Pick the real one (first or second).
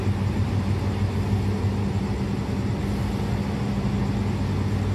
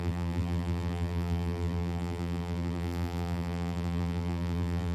first